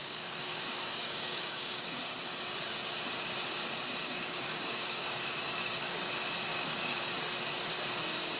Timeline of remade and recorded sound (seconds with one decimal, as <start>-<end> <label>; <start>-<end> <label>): 0.0-2.0 remade; 2.0-4.0 recorded; 4.0-6.1 remade; 6.1-6.5 recorded; 6.5-7.0 remade; 7.0-8.4 recorded